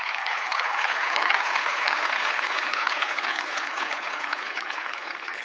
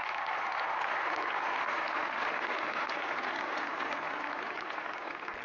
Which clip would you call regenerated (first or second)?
first